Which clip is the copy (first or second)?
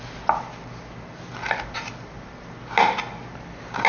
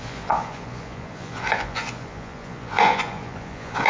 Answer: second